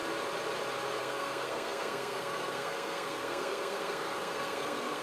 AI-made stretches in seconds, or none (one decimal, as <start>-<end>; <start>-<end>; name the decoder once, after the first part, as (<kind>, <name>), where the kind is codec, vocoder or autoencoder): 1.0-5.0 (codec, SNAC)